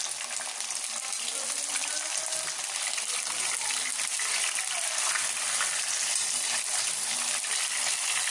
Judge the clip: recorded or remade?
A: recorded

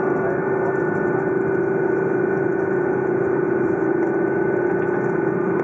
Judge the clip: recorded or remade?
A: recorded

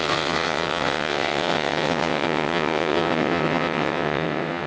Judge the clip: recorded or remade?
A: remade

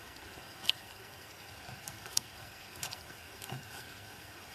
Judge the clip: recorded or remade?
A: remade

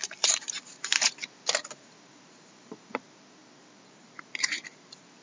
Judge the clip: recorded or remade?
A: remade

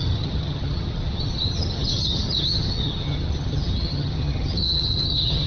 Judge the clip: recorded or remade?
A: remade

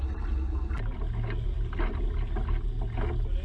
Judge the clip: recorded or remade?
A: recorded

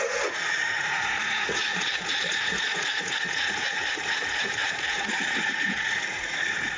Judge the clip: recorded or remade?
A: remade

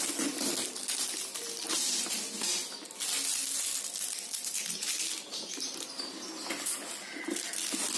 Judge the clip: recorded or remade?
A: recorded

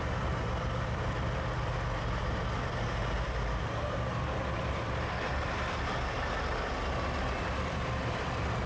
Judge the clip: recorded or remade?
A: remade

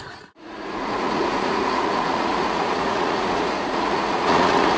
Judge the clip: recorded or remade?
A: remade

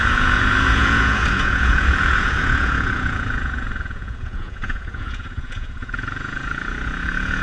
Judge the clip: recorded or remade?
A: remade